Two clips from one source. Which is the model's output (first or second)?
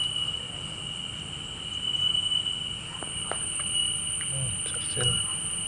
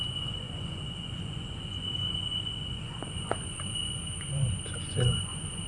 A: second